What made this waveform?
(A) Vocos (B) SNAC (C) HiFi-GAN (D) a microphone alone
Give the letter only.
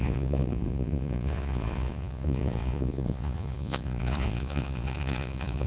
A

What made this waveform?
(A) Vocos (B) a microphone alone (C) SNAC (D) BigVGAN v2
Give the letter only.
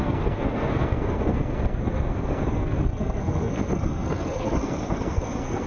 C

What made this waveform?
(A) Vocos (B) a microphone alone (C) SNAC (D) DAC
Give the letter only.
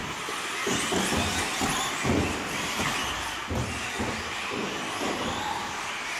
B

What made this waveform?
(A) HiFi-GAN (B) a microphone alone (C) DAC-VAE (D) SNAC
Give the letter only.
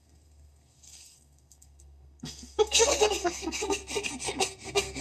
D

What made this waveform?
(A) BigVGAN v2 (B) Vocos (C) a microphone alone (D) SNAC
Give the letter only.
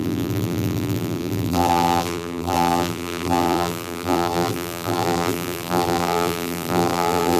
A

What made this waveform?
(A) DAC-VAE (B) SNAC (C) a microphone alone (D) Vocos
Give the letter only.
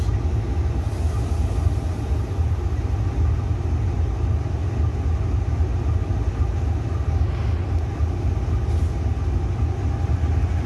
C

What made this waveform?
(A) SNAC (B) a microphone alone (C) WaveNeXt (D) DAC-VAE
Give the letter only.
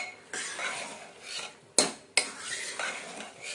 B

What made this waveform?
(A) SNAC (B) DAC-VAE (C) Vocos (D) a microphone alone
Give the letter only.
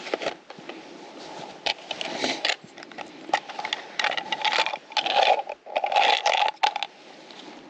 D